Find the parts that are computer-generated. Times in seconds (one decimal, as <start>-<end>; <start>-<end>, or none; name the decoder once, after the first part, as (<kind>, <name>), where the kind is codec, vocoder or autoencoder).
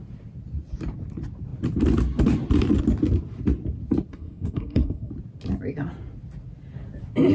4.1-5.1 (codec, SNAC)